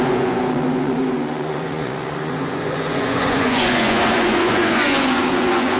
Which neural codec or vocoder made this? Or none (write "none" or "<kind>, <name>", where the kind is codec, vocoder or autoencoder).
vocoder, Vocos